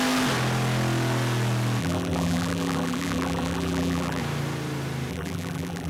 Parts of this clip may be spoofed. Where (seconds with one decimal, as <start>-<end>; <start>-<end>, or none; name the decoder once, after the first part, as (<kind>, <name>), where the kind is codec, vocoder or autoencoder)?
1.8-4.2 (vocoder, BigVGAN v2); 5.1-5.9